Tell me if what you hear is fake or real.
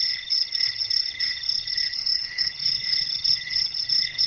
fake